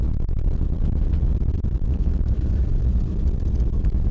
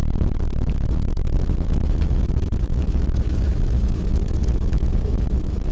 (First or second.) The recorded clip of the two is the first